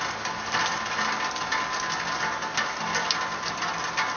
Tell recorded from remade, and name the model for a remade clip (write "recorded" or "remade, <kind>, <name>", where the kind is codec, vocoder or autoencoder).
recorded